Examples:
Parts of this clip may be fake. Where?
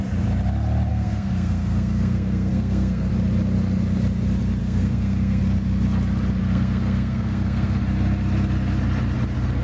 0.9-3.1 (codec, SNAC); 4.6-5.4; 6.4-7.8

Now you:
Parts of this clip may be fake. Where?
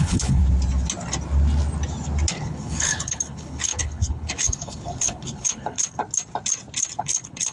0.0-0.4 (codec, HILCodec); 2.3-6.0; 7.0-7.5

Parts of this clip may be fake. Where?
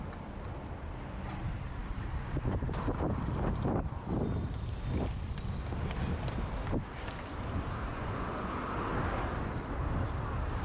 7.9-8.6 (vocoder, Vocos)